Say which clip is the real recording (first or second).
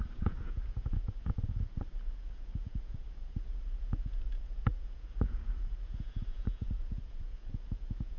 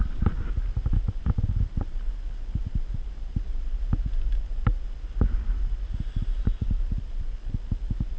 second